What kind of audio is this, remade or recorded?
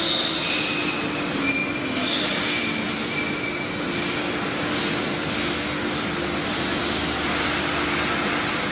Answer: recorded